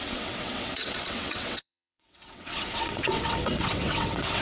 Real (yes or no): no